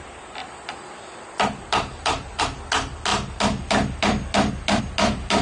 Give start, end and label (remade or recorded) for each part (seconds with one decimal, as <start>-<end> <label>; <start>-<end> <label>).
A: 0.0-0.4 recorded; 0.4-2.4 remade; 2.4-5.4 recorded